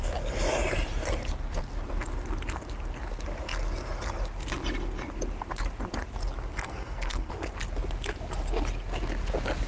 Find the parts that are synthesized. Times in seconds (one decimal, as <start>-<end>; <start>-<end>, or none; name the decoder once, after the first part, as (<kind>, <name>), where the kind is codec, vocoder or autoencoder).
6.6-7.3 (codec, SNAC)